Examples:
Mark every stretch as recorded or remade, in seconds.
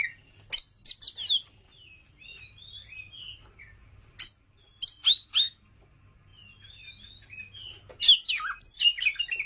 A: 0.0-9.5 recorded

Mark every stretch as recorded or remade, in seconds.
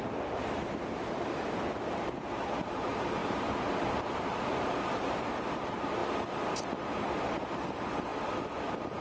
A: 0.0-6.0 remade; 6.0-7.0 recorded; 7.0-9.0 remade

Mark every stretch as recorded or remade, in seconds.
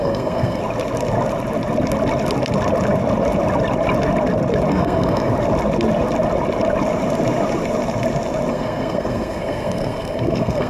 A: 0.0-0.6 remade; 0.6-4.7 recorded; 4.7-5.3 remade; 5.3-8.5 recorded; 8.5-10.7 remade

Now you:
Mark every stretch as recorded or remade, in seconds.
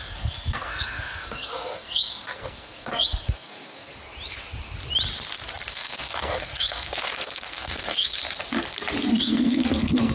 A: 0.0-3.9 remade; 3.9-5.7 recorded; 5.7-8.2 remade; 8.2-9.1 recorded; 9.1-10.1 remade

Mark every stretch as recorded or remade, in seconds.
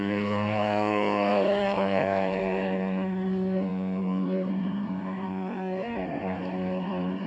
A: 0.0-7.3 remade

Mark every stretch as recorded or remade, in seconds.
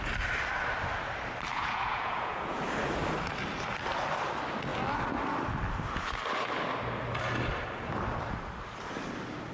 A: 0.0-1.5 recorded; 1.5-2.6 remade; 2.6-9.5 recorded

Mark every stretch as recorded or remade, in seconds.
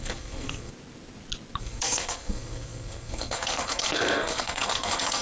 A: 0.0-0.7 remade; 0.7-1.6 recorded; 1.6-5.2 remade